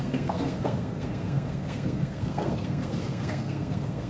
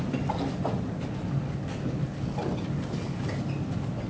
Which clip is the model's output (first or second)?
first